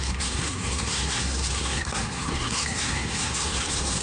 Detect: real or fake fake